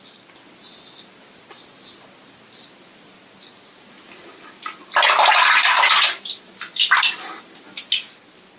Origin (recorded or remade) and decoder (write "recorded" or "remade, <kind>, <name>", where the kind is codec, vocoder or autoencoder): recorded